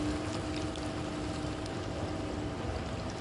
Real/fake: real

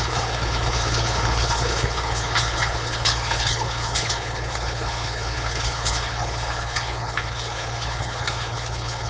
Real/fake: fake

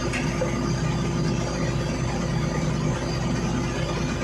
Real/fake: real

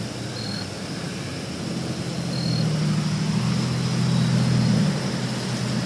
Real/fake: real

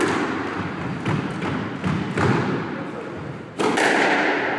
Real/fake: real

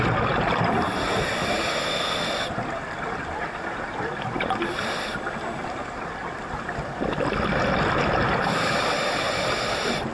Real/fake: real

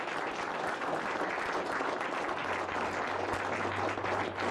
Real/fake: real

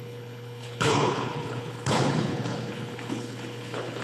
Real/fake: fake